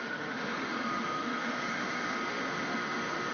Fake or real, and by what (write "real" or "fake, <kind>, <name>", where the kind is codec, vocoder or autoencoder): fake, autoencoder, DAC-VAE